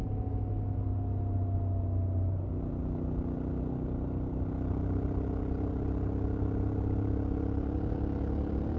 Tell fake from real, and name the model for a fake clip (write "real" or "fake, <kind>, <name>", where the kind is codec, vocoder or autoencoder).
real